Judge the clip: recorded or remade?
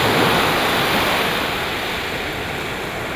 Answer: recorded